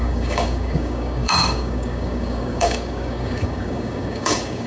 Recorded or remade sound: remade